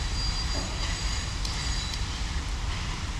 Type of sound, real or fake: real